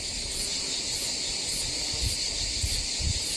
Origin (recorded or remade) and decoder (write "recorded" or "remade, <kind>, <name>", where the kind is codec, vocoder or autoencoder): recorded